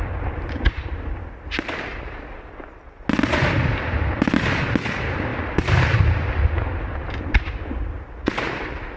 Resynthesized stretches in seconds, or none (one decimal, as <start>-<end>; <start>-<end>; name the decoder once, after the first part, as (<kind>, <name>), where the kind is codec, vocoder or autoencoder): none